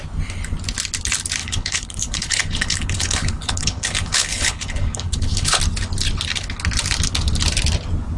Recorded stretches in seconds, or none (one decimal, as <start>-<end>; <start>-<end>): 0.0-1.4; 5.6-8.2